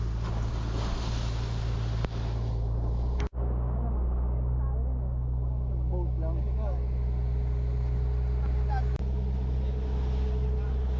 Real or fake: real